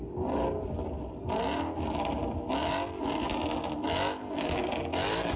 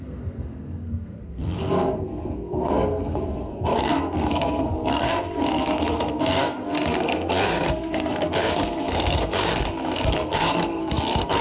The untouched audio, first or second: first